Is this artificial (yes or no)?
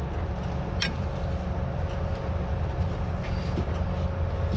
no